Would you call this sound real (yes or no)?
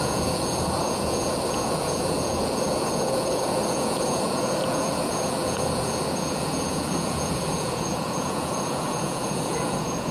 no